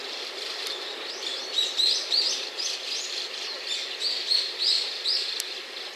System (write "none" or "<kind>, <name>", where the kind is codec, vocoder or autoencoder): vocoder, BigVGAN v2